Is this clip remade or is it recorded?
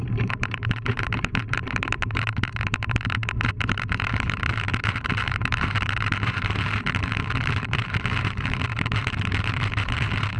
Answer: remade